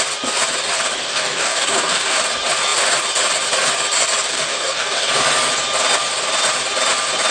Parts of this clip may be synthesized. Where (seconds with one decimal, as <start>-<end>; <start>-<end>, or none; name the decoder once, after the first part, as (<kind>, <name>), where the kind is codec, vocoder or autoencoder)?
1.0-2.2 (codec, DAC); 4.3-5.1